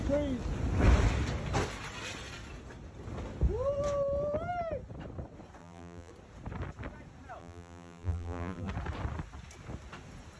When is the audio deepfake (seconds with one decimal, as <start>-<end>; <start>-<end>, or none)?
5.6-6.1; 7.4-8.7